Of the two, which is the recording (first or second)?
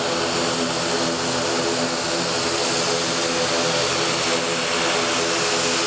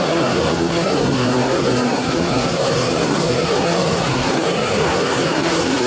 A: first